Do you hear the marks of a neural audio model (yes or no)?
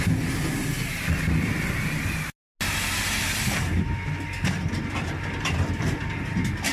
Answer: no